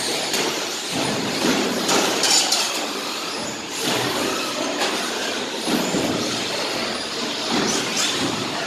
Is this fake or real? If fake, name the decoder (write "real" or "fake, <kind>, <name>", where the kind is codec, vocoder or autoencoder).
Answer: fake, vocoder, BigVGAN v2